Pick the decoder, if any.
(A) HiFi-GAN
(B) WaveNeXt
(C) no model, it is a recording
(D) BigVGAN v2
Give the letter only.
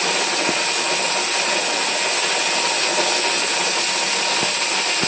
C